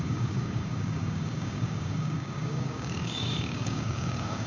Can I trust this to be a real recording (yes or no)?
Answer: no